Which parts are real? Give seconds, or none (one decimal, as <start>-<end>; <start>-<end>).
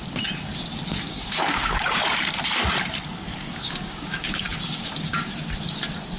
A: 0.0-0.9; 2.0-3.3; 5.3-6.2